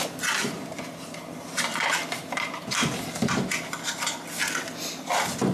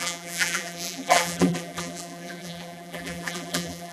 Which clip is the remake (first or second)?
second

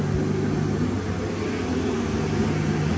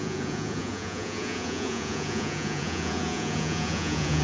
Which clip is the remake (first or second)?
second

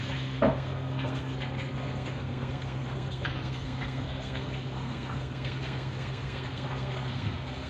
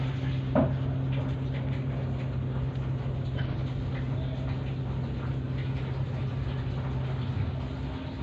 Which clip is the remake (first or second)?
first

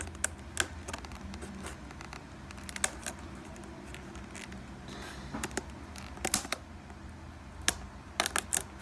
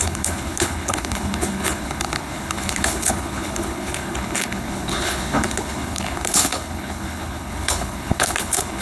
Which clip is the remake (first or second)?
second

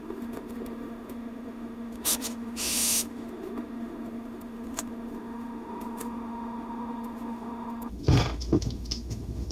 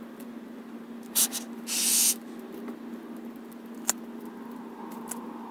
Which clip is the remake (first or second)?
first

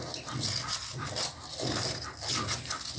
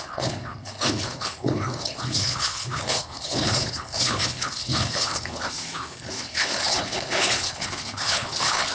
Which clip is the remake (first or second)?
second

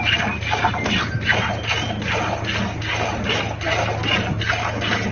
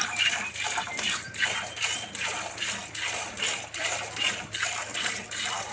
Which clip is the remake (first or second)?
second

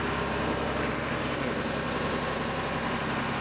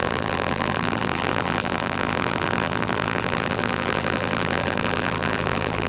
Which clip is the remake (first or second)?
second